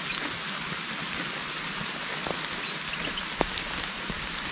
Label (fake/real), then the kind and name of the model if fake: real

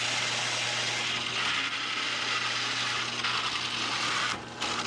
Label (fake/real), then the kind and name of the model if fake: real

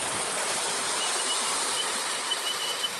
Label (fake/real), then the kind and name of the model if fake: fake, vocoder, BigVGAN v2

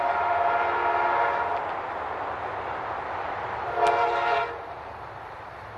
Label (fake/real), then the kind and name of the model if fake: real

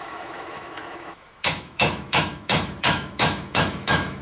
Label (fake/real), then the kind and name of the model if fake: fake, autoencoder, DAC-VAE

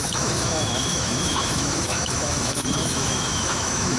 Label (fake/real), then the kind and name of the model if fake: fake, autoencoder, DAC-VAE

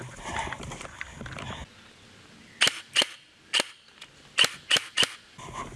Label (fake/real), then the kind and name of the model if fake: real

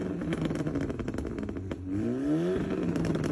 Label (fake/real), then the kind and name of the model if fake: real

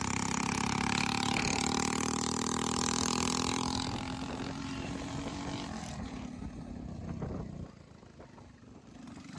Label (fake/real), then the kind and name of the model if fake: fake, vocoder, BigVGAN v2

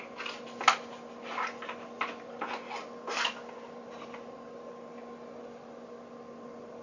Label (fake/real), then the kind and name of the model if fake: real